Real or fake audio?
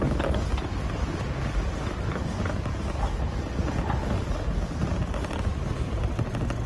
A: real